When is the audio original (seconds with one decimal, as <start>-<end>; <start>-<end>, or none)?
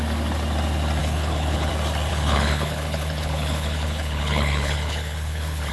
0.0-1.0; 1.7-2.1